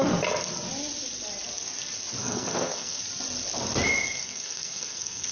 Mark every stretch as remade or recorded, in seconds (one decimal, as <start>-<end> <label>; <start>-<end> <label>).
0.0-2.2 recorded; 2.2-3.0 remade; 3.0-4.2 recorded; 4.2-5.3 remade